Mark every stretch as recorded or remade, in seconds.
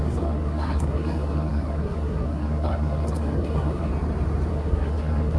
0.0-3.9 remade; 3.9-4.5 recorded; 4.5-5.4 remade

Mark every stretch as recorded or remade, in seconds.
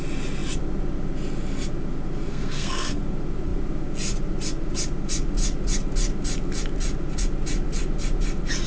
0.0-2.3 recorded; 2.3-3.0 remade; 3.0-8.7 recorded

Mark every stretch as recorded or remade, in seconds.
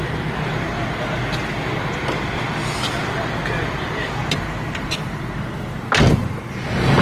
0.0-7.0 recorded